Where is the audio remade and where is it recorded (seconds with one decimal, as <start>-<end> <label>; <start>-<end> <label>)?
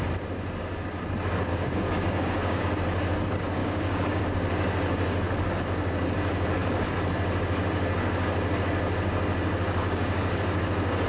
0.0-1.5 recorded; 1.5-2.6 remade; 2.6-3.6 recorded; 3.6-4.2 remade; 4.2-9.8 recorded; 9.8-10.6 remade; 10.6-11.1 recorded